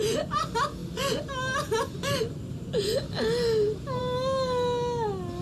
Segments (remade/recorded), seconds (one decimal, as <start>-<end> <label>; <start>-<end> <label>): 0.0-5.4 recorded